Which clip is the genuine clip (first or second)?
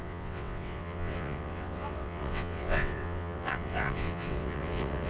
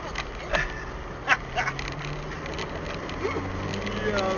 second